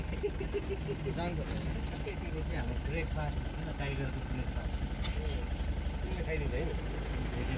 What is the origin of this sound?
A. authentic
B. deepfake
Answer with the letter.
A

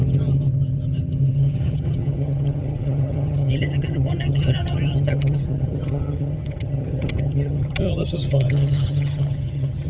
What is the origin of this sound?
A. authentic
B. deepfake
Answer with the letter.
B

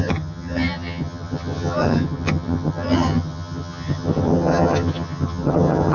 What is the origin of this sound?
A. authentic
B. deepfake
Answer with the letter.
B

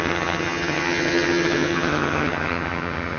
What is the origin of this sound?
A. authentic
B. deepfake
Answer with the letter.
B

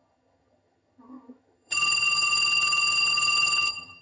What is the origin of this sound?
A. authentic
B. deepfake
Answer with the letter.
B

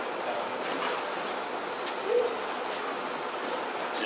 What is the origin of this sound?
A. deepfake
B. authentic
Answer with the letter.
B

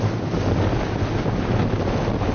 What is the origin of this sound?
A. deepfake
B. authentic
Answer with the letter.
B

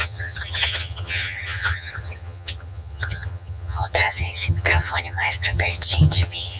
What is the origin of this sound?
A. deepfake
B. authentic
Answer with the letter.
A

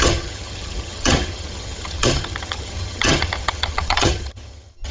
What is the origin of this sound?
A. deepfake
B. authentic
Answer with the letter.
A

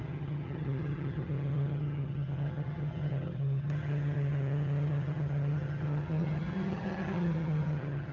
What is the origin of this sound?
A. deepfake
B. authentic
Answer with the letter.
A